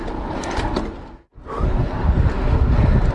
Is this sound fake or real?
real